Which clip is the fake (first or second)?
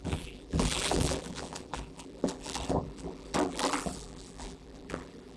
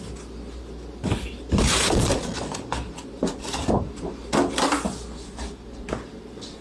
first